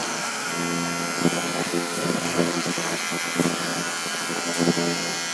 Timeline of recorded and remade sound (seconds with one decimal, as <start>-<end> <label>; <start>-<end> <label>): 0.0-0.5 remade; 0.5-1.6 recorded; 1.6-3.0 remade; 3.0-5.3 recorded